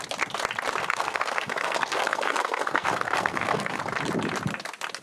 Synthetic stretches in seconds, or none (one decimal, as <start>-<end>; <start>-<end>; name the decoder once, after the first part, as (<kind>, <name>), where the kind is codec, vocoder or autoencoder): 0.8-3.8 (codec, SNAC)